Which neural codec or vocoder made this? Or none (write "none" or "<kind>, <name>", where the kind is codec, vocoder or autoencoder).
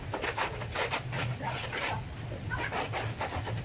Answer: none